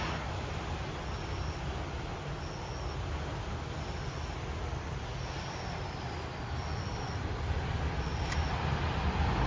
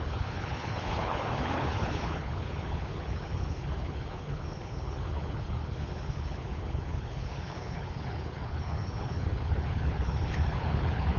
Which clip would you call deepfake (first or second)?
second